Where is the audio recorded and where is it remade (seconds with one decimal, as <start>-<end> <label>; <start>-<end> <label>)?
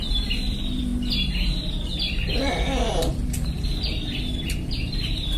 0.0-0.9 remade; 0.9-1.7 recorded; 1.7-5.4 remade